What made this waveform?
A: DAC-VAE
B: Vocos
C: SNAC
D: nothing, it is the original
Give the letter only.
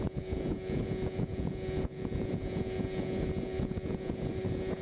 B